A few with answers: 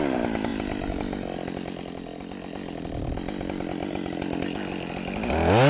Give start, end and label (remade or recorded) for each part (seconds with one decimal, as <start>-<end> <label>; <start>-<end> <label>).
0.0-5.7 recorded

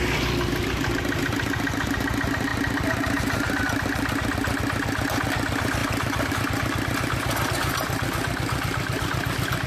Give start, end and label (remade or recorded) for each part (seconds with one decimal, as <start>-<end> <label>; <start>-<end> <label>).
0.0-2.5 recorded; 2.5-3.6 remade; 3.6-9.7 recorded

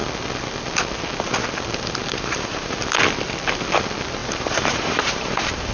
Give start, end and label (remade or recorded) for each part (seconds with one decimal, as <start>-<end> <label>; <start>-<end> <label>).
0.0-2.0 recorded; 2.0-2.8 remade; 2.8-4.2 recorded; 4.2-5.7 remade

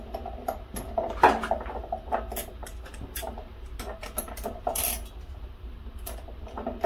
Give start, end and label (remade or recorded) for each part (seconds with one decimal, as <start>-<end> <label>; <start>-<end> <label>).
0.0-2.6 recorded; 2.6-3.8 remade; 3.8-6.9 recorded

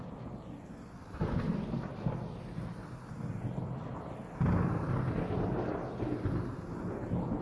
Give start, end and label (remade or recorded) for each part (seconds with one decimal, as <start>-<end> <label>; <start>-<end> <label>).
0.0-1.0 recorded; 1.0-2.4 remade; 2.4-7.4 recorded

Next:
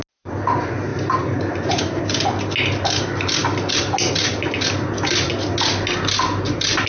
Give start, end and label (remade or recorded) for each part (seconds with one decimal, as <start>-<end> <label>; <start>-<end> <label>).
0.0-0.9 recorded; 0.9-2.0 remade; 2.0-6.9 recorded

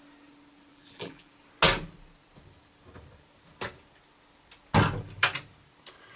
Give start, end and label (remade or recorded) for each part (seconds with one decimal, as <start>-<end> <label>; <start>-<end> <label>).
0.0-0.7 recorded; 0.7-1.3 remade; 1.3-6.2 recorded